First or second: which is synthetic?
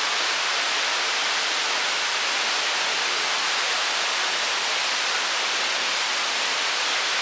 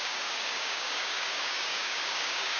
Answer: second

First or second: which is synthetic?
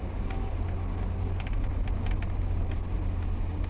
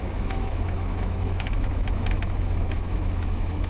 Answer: second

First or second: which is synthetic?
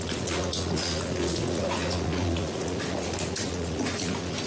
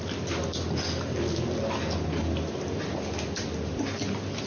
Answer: first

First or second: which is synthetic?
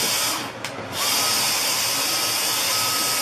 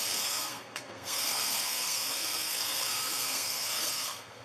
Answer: second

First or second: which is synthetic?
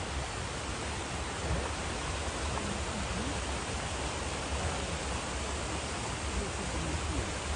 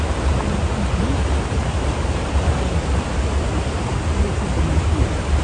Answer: second